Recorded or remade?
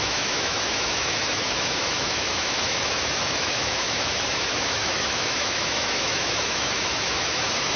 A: remade